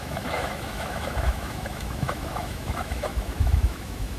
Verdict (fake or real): fake